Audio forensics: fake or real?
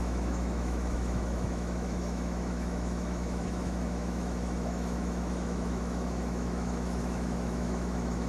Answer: fake